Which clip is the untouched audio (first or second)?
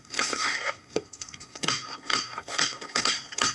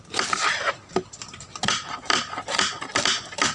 second